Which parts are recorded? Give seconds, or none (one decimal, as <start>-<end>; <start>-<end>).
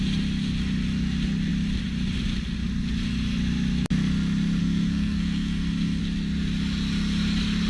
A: 0.0-4.6; 6.0-7.7